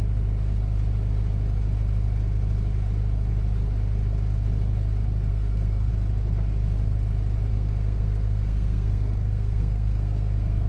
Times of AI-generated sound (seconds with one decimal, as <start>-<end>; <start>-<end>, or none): 5.3-5.9; 7.5-10.7